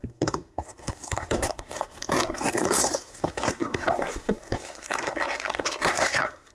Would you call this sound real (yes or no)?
no